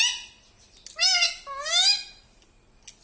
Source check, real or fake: real